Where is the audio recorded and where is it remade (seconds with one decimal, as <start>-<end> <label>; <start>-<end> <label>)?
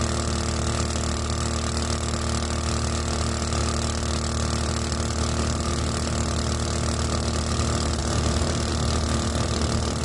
0.0-8.0 recorded; 8.0-8.7 remade; 8.7-10.0 recorded